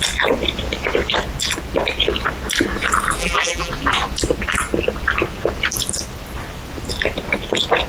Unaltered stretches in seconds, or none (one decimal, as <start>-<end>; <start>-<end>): 0.0-3.2; 3.7-7.9